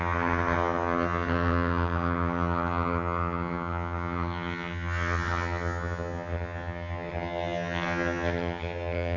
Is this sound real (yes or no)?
no